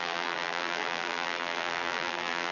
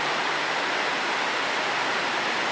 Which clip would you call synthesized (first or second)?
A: first